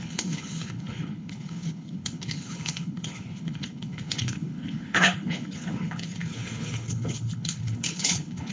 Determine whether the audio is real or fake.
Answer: fake